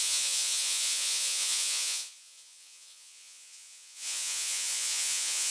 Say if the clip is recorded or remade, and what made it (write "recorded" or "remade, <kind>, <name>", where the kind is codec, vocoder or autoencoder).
remade, vocoder, Vocos